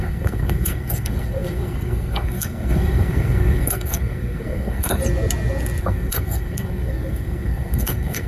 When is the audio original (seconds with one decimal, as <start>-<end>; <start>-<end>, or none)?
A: 5.0-5.8